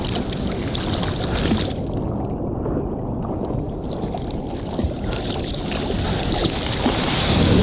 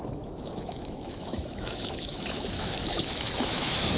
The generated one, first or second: second